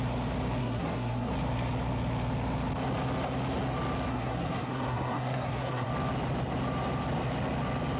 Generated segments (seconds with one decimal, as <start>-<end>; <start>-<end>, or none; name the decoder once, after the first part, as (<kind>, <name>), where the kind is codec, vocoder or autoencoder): 0.6-1.3 (codec, SNAC); 4.1-5.9